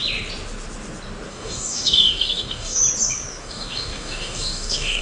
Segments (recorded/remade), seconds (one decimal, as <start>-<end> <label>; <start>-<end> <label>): 0.0-1.3 recorded; 1.3-2.8 remade; 2.8-3.4 recorded; 3.4-5.0 remade